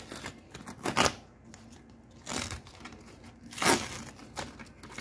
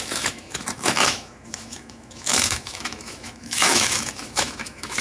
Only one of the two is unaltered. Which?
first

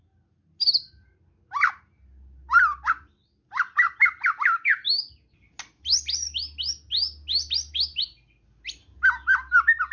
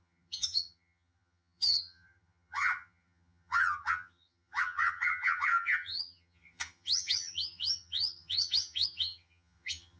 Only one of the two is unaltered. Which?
first